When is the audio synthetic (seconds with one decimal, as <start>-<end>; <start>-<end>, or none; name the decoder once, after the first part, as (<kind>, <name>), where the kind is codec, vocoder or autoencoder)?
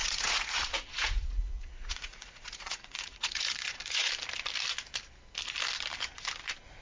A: 0.0-4.1 (vocoder, Vocos)